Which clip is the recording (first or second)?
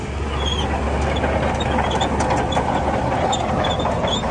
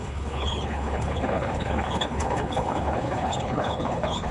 first